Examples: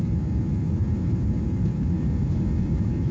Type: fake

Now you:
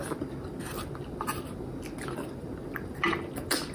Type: real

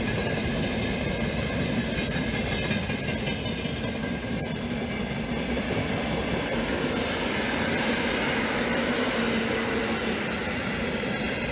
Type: real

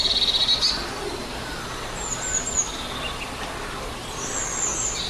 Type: real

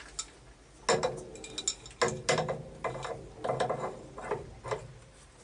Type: real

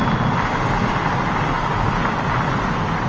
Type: real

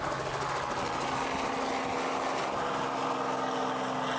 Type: real